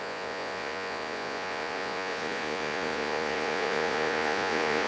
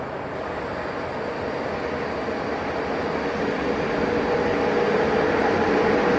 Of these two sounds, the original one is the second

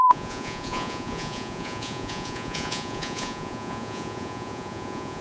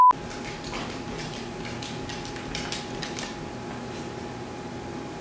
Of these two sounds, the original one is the second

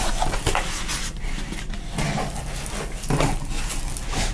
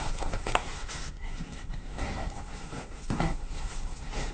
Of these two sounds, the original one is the first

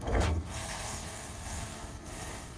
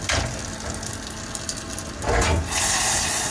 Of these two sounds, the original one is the second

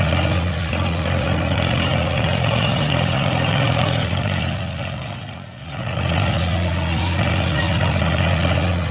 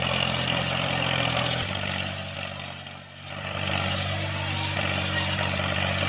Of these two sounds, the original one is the second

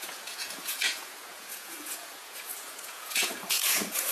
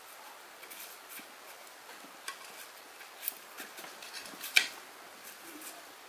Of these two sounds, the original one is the second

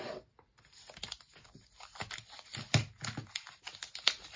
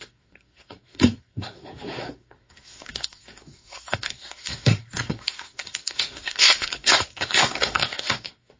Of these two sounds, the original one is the first